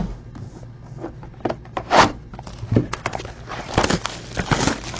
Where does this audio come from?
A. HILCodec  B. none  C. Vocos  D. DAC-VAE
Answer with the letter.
B